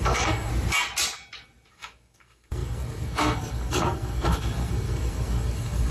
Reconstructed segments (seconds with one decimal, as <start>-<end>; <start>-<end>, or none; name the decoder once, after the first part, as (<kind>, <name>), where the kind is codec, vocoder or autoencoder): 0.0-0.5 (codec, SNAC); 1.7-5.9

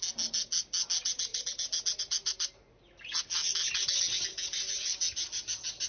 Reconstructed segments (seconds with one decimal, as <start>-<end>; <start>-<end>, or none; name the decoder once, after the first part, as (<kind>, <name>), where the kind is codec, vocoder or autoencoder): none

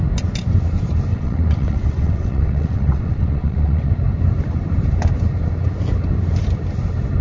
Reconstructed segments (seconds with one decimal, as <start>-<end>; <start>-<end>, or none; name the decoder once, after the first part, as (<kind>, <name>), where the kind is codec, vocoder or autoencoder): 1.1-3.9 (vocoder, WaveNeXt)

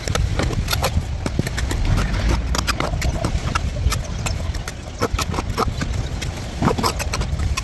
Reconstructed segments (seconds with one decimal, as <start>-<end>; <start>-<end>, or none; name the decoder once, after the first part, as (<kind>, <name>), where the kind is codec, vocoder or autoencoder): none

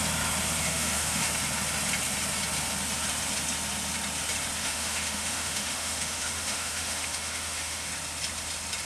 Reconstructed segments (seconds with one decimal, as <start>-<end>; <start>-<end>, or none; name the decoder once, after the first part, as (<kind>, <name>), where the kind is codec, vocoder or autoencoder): 0.6-1.3 (autoencoder, DAC-VAE); 4.6-7.9

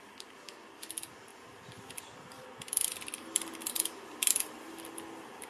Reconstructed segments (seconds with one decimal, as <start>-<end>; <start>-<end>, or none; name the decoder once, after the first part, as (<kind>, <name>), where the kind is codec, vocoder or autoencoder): none